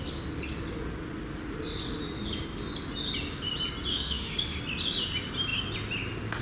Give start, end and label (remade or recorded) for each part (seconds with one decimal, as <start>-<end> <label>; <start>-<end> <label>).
0.0-3.9 recorded; 3.9-4.6 remade; 4.6-6.4 recorded